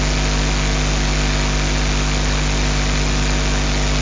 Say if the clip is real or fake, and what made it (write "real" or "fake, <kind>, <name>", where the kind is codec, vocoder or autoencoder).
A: real